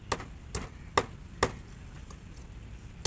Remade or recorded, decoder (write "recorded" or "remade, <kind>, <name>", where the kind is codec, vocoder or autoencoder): recorded